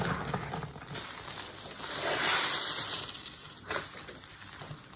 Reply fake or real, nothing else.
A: real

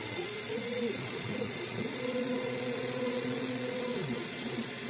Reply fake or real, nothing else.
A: fake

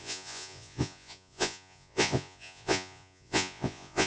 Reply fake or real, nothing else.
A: fake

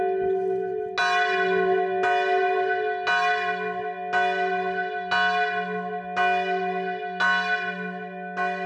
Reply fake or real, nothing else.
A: real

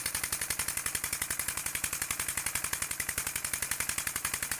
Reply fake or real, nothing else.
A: real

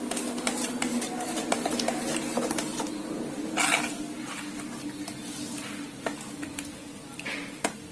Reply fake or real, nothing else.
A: real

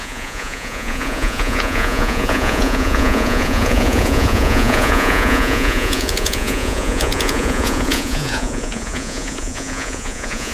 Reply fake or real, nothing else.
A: fake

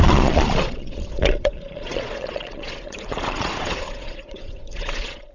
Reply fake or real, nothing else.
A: fake